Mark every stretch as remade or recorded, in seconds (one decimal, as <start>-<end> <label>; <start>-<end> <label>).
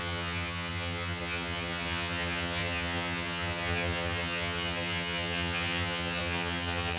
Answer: 0.0-7.0 remade